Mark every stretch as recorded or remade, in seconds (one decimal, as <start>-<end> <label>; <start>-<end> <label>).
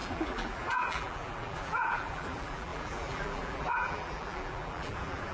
0.0-5.3 remade